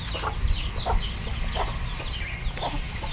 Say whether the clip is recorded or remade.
recorded